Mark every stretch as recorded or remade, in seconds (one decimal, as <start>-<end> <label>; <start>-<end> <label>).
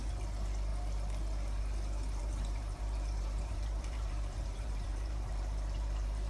0.0-2.2 recorded; 2.2-6.3 remade